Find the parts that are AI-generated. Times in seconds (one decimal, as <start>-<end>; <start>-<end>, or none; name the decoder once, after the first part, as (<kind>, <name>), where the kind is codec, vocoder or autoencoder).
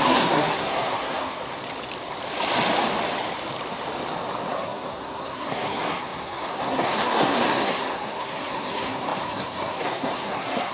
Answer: 0.0-1.4 (codec, SNAC); 4.5-10.7